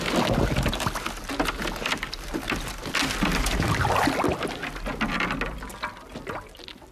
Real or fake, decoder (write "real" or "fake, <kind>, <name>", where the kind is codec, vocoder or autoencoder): real